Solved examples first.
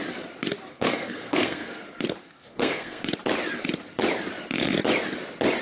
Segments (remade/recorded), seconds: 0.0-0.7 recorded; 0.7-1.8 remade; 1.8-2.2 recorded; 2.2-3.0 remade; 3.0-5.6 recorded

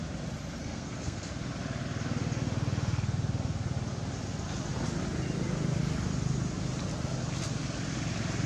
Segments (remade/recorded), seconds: 0.0-0.6 recorded; 0.6-1.3 remade; 1.3-8.5 recorded

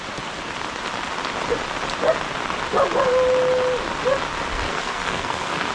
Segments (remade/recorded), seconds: 0.0-4.5 recorded; 4.5-5.7 remade

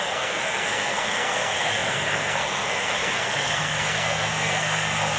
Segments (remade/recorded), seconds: 0.0-5.2 remade

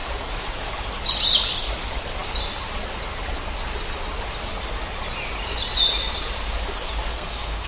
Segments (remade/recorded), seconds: 0.0-7.1 recorded; 7.1-7.7 remade

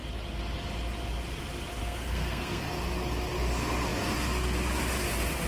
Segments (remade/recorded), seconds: 0.0-1.8 recorded; 1.8-2.6 remade; 2.6-5.5 recorded